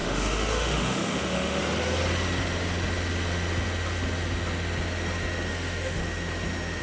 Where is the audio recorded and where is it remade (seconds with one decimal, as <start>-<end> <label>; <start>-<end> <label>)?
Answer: 0.0-1.6 remade; 1.6-5.5 recorded; 5.5-6.0 remade; 6.0-6.8 recorded